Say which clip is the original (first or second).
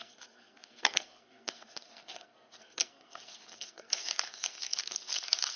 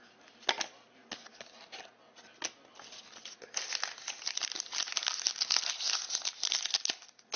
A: second